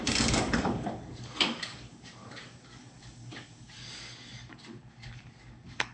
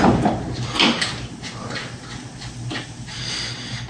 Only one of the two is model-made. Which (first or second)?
first